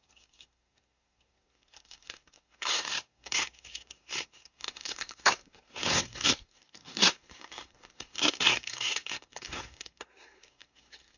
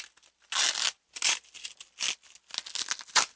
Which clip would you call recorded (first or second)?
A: second